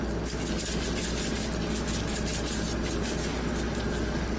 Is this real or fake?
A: real